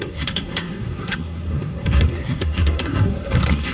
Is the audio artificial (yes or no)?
yes